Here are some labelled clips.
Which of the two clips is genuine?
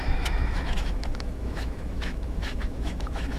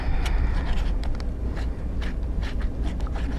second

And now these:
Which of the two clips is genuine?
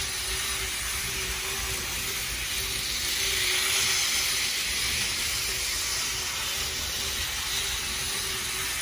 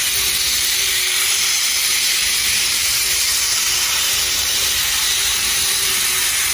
first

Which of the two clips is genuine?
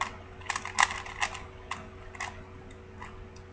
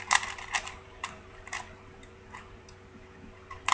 first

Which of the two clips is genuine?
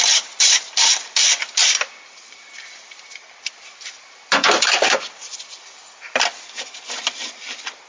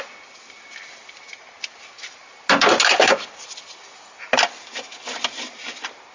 second